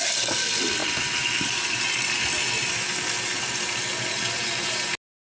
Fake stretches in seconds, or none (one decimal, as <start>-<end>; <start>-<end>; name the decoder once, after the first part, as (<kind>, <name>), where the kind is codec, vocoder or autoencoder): none